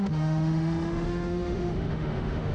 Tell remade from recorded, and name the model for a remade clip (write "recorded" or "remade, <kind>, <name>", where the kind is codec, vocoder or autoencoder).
remade, autoencoder, DAC-VAE